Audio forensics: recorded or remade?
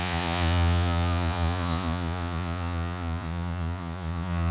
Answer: remade